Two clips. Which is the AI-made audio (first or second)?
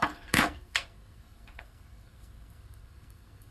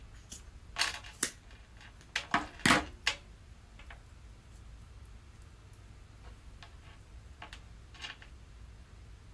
first